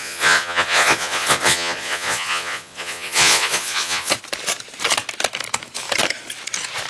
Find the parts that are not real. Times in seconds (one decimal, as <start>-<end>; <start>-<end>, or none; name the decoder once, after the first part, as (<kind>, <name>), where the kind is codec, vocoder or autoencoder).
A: 0.0-4.1 (vocoder, Vocos)